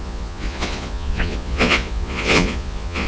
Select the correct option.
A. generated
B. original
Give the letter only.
A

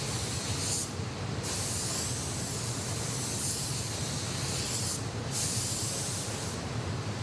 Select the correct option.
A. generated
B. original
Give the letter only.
B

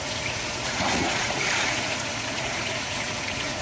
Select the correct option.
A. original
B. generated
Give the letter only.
B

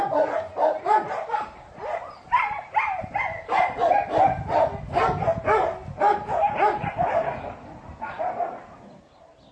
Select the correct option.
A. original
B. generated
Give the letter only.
A